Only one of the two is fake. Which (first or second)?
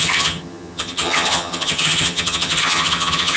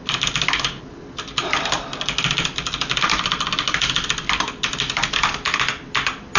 first